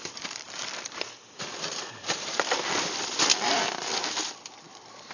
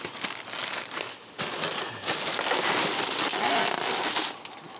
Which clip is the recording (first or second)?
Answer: second